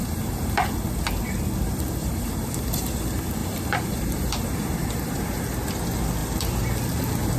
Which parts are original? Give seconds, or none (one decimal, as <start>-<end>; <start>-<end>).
0.5-2.0; 3.0-3.4; 5.4-7.4

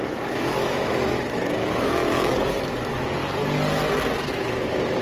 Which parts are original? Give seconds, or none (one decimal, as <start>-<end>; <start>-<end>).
3.2-4.3

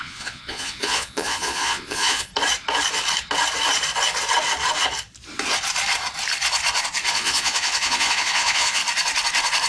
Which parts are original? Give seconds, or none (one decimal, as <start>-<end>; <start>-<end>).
2.3-7.1; 8.8-9.7

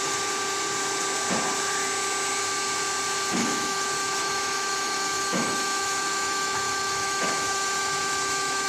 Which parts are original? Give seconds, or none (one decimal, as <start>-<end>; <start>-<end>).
0.0-3.4

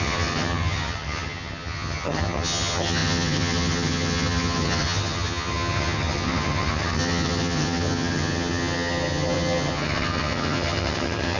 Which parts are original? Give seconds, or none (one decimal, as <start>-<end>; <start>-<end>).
none